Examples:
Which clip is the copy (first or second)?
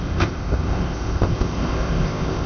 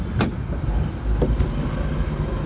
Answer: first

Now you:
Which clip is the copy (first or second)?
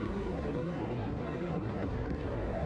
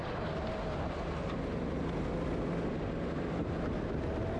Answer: first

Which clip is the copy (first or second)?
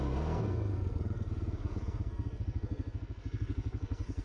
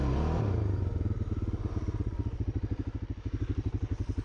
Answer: first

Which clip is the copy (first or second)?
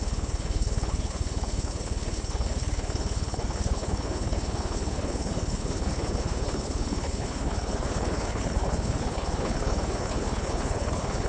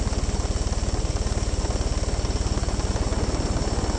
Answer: first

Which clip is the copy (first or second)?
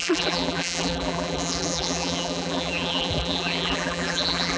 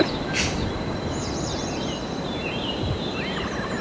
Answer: first